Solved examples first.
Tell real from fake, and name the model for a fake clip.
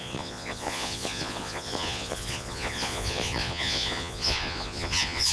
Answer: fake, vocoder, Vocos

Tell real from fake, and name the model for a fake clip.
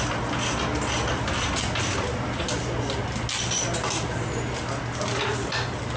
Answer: real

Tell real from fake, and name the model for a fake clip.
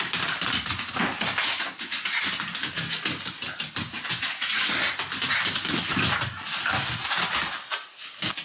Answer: real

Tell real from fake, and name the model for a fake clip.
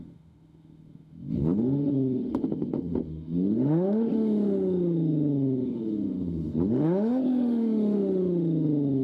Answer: fake, autoencoder, DAC-VAE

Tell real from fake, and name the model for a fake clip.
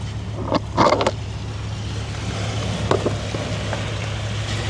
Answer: real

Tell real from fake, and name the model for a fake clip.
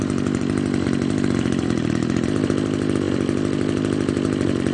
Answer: real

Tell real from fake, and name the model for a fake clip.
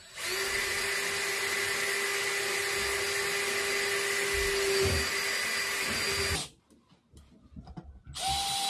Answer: real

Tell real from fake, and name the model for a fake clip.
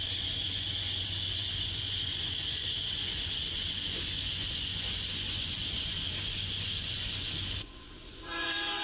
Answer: fake, vocoder, Vocos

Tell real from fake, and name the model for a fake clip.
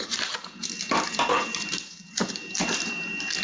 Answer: fake, vocoder, BigVGAN v2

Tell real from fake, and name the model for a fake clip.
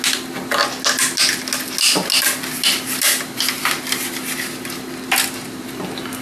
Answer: real